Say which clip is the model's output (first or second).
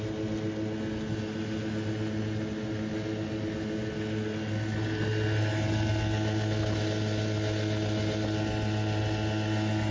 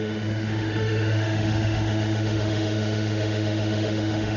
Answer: second